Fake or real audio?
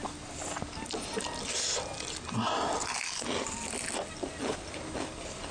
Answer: real